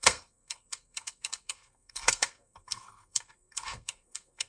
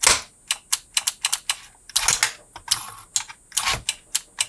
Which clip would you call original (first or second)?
second